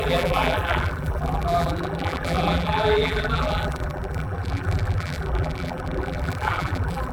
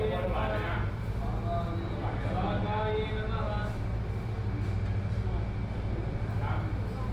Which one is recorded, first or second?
second